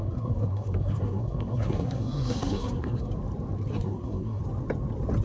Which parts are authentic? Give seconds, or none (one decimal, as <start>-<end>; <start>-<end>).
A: 3.1-3.7; 4.4-5.2